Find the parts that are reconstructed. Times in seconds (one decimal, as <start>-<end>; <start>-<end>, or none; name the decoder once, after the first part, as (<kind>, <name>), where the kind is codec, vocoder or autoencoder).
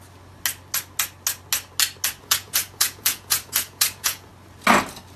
2.2-4.3 (vocoder, Vocos)